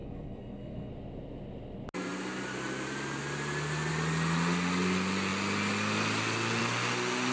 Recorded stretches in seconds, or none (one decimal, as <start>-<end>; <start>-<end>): 0.9-7.3